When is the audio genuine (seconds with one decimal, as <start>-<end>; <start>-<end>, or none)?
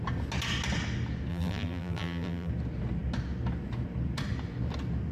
0.0-1.3; 2.5-5.1